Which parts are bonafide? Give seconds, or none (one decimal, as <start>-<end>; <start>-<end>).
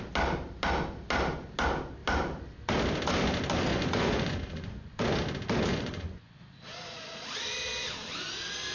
0.0-3.7; 5.0-5.7; 6.4-8.7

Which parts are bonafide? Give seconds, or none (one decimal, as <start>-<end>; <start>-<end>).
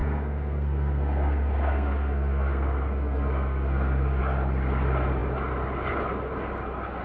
4.2-7.0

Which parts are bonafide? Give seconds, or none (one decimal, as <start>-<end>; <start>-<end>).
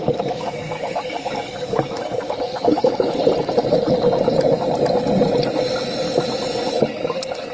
3.2-6.7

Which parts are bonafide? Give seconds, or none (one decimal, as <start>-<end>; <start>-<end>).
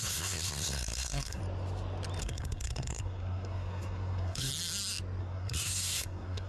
1.4-2.2; 4.5-5.2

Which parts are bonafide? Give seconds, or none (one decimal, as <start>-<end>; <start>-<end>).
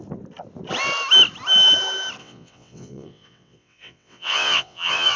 0.0-2.2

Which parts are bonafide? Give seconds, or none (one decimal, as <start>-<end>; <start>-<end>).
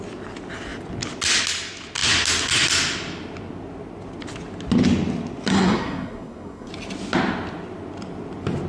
0.0-5.5; 6.7-8.7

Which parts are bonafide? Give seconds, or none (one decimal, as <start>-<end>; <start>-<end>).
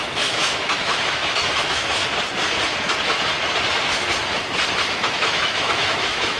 2.0-4.9